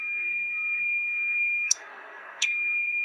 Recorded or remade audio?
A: remade